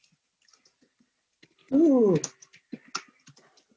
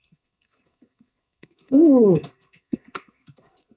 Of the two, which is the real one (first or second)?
first